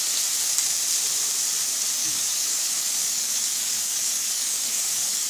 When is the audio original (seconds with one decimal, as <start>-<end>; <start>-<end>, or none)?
0.0-2.0